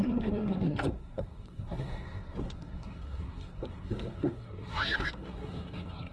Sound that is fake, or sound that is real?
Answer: fake